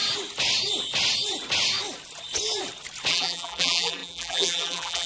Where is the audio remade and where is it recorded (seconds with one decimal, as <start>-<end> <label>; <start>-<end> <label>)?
0.0-3.1 recorded; 3.1-5.1 remade